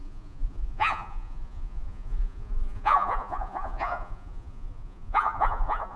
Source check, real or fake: fake